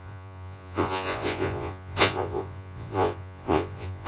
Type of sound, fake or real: fake